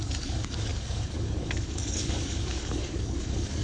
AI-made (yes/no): yes